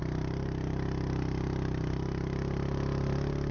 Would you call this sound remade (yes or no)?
yes